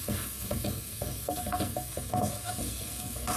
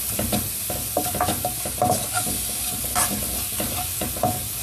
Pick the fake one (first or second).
first